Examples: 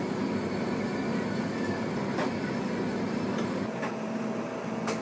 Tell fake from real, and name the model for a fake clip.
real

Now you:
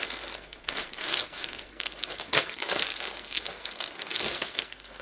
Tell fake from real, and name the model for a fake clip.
fake, codec, SNAC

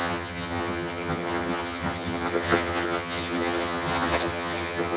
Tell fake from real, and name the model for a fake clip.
fake, vocoder, HiFi-GAN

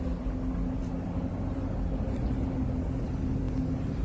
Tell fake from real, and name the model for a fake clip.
real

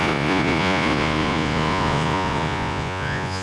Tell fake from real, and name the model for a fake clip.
fake, vocoder, Vocos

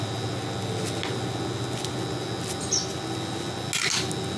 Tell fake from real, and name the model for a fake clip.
real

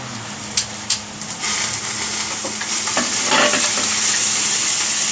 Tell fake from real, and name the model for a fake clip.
real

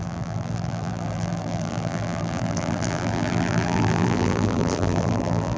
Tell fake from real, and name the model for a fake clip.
fake, vocoder, BigVGAN v2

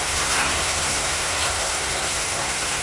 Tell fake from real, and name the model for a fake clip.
fake, codec, SNAC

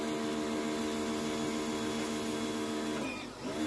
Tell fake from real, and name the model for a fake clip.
real